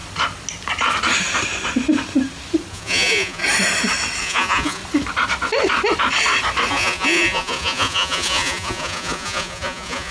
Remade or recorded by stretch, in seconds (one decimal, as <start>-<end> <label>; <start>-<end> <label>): 0.0-2.7 recorded; 2.7-3.4 remade; 3.4-4.2 recorded; 4.2-4.8 remade; 4.8-6.7 recorded; 6.7-10.1 remade

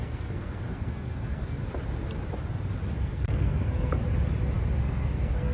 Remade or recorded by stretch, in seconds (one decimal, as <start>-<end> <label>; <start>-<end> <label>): 0.0-1.6 remade; 1.6-3.0 recorded; 3.0-4.0 remade; 4.0-4.8 recorded; 4.8-5.5 remade

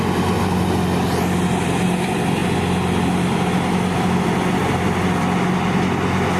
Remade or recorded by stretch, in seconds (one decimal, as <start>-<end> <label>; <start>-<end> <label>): 0.0-6.4 recorded

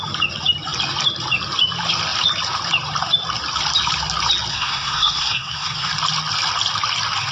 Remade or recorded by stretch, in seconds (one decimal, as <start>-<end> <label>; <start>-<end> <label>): 0.0-4.5 recorded; 4.5-5.9 remade; 5.9-7.3 recorded